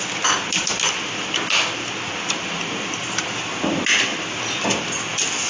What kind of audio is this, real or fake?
real